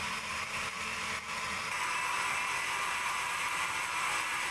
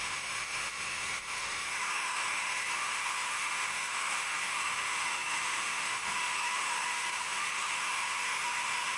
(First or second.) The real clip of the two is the first